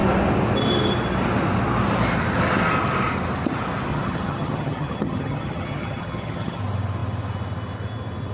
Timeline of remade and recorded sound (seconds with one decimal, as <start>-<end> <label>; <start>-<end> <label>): 0.0-3.9 recorded; 3.9-6.6 remade; 6.6-8.3 recorded